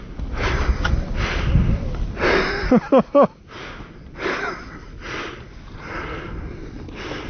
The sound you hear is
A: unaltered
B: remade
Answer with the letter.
A